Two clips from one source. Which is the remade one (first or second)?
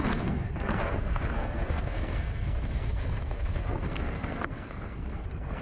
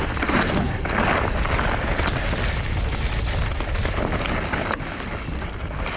first